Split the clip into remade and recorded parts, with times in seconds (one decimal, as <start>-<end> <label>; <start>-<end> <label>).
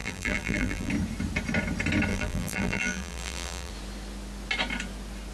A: 0.0-0.9 remade; 0.9-2.1 recorded; 2.1-3.7 remade; 3.7-5.3 recorded